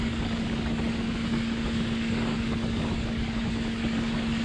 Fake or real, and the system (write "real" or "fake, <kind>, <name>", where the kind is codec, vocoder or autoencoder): fake, codec, DAC